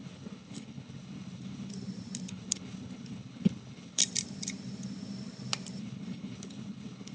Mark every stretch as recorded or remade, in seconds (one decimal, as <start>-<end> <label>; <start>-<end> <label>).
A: 0.0-1.7 remade; 1.7-2.3 recorded; 2.3-4.0 remade; 4.0-5.8 recorded; 5.8-7.1 remade